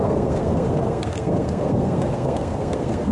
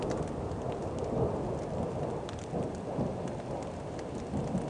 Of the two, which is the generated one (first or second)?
first